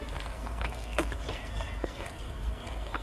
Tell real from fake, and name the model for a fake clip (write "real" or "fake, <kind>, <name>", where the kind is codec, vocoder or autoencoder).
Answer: fake, codec, SNAC